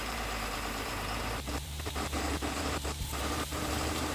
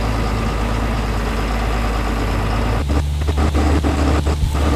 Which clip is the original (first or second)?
second